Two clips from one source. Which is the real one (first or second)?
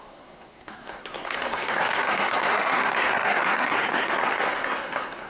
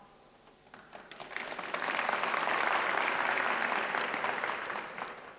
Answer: second